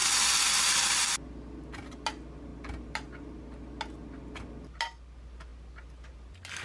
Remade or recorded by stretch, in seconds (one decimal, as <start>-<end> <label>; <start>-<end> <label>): 0.0-6.6 recorded